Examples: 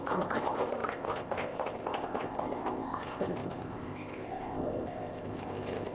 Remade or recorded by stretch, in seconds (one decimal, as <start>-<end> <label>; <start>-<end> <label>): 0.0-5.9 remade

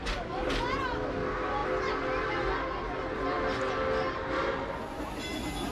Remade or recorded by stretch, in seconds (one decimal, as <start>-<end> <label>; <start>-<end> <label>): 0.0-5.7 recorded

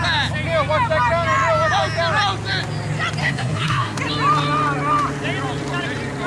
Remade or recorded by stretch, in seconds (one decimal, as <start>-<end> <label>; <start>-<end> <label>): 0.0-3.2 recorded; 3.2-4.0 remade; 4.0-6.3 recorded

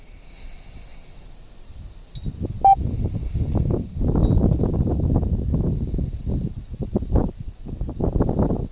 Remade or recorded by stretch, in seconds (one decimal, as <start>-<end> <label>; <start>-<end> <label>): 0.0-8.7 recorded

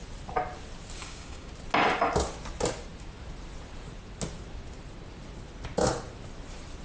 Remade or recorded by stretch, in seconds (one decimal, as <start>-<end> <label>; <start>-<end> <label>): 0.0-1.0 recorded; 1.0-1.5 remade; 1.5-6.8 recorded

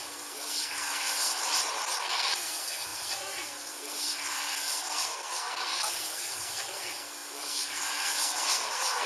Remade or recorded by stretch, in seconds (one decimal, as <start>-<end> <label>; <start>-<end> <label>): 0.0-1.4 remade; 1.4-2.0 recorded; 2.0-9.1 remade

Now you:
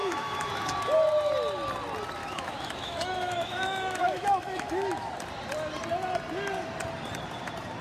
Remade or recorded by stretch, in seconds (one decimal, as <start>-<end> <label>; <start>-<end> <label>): 0.0-0.5 remade; 0.5-2.2 recorded; 2.2-5.1 remade; 5.1-7.8 recorded